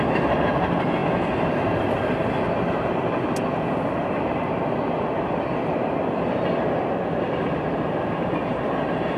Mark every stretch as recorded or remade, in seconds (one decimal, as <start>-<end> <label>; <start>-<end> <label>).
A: 0.0-9.2 recorded